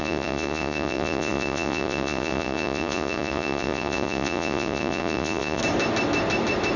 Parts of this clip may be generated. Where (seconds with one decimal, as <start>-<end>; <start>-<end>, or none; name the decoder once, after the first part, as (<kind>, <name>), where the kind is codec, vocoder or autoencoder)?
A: 0.0-5.6 (vocoder, Vocos)